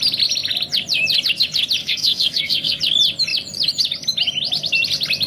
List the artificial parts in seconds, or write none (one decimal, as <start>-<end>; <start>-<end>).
1.8-2.8